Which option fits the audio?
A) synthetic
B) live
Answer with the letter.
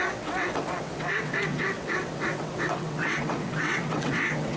A